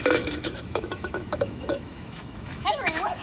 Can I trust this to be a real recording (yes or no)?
no